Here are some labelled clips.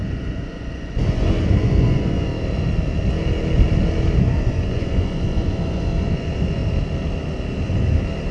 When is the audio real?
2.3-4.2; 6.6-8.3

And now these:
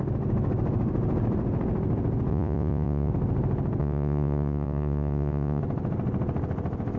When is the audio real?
0.0-2.3; 3.1-3.8; 5.6-7.0

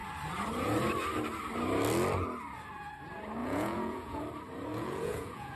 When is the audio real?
0.0-3.4; 4.2-4.7